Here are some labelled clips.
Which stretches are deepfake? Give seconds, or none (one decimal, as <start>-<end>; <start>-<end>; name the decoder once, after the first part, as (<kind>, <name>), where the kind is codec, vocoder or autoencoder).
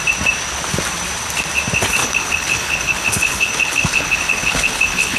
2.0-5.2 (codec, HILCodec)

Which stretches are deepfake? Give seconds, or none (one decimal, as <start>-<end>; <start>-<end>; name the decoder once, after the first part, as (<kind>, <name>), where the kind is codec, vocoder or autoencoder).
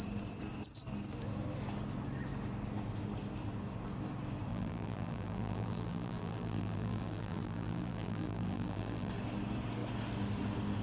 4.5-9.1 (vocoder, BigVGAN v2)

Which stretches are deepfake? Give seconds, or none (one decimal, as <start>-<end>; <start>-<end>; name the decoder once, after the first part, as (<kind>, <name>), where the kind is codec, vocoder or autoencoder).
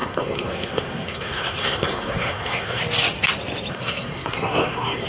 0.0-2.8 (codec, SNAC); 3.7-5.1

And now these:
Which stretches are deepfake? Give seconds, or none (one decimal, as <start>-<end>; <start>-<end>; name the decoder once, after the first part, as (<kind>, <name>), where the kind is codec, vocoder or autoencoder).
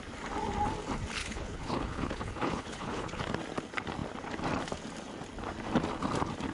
1.2-3.2 (codec, HILCodec)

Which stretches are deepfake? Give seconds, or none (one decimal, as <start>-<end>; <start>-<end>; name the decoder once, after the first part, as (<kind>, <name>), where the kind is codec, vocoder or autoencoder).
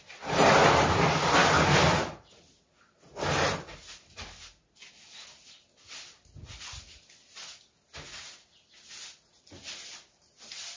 none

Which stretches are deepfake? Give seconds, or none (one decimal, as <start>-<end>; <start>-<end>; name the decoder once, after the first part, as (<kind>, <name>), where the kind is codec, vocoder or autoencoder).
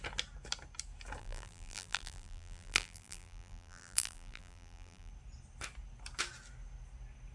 1.2-5.1 (vocoder, BigVGAN v2)